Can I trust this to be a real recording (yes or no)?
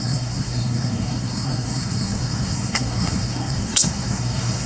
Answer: no